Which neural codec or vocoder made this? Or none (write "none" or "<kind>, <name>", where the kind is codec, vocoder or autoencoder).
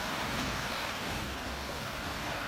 codec, DAC